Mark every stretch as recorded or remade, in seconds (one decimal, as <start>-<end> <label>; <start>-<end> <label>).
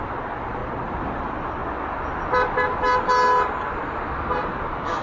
0.0-5.0 recorded